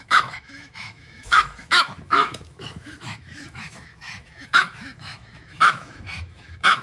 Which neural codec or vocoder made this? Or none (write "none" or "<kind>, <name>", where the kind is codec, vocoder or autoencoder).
autoencoder, DAC-VAE